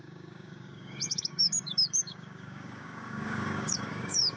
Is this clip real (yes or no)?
no